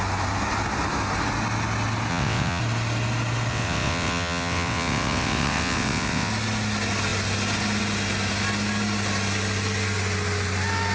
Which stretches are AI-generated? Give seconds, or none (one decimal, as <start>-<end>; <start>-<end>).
2.1-2.6; 3.5-6.3